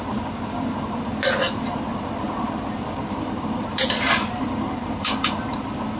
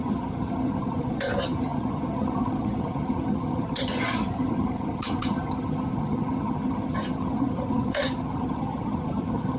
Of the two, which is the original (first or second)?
first